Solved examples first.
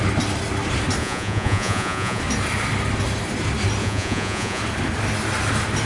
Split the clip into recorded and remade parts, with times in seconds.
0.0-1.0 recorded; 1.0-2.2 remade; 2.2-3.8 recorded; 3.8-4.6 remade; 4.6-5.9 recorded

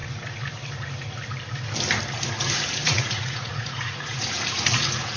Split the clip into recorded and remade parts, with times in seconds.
0.0-2.8 recorded; 2.8-5.2 remade

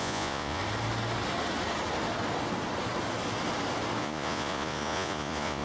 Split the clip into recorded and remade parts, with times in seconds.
0.0-0.6 remade; 0.6-4.0 recorded; 4.0-5.6 remade

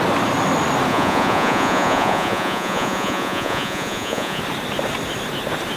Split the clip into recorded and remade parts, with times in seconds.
0.0-0.9 recorded; 0.9-4.4 remade; 4.4-5.8 recorded